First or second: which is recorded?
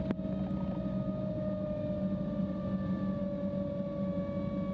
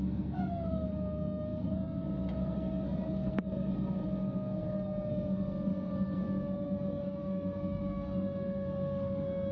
first